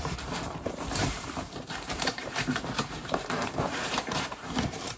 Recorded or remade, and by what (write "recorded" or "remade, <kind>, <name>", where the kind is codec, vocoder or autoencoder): remade, vocoder, BigVGAN v2